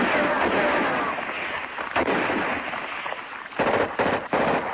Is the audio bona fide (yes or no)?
yes